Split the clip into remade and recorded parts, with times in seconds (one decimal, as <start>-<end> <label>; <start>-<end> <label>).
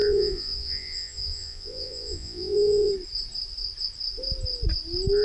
0.0-2.9 remade; 2.9-5.2 recorded